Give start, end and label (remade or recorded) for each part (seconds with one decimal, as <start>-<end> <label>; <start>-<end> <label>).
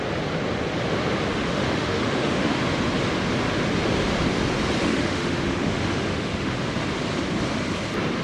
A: 0.0-1.3 recorded; 1.3-2.5 remade; 2.5-4.8 recorded; 4.8-6.5 remade; 6.5-8.2 recorded